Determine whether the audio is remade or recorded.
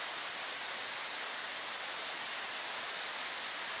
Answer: recorded